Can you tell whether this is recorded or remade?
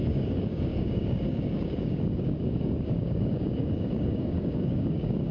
remade